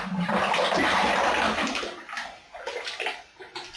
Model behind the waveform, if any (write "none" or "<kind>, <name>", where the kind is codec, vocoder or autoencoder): none